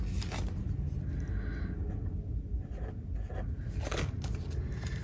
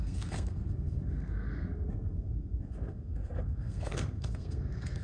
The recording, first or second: first